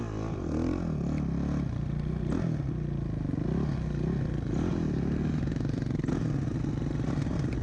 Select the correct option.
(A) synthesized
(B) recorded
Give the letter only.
B